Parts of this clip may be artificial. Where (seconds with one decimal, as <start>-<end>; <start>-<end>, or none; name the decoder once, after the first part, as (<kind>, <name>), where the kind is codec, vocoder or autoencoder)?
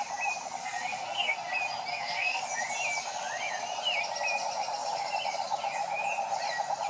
0.6-1.5 (codec, SNAC); 1.9-2.4